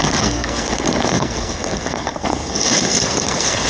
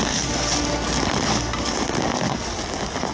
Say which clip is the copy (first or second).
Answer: first